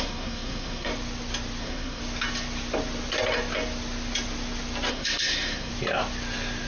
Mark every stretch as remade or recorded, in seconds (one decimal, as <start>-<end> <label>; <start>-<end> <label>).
0.0-0.9 remade; 0.9-1.6 recorded; 1.6-2.0 remade; 2.0-4.9 recorded; 4.9-5.7 remade; 5.7-6.7 recorded